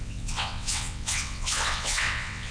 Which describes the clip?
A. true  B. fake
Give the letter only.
B